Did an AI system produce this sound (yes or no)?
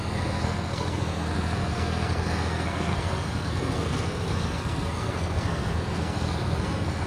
yes